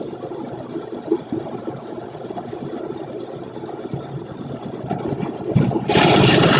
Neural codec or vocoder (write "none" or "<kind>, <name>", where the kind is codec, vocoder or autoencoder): vocoder, BigVGAN v2